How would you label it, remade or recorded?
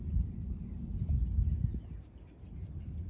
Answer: recorded